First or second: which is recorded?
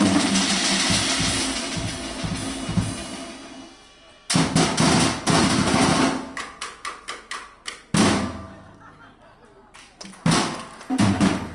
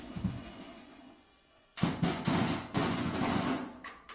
first